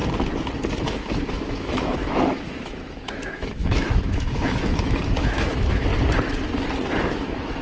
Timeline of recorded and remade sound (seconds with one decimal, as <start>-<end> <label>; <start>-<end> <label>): 0.0-0.8 recorded; 0.8-5.9 remade; 5.9-7.0 recorded; 7.0-7.6 remade